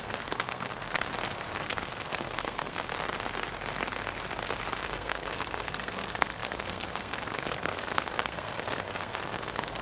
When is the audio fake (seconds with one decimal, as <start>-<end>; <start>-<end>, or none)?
0.0-1.1; 1.6-2.9; 4.8-9.8